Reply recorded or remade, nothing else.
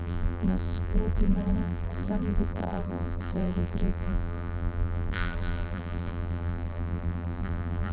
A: remade